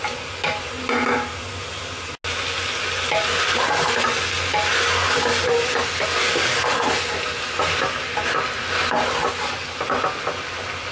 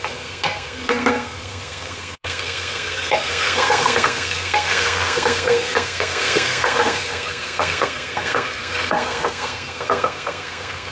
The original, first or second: first